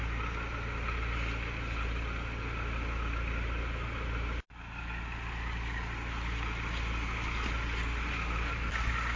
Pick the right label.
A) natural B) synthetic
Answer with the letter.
A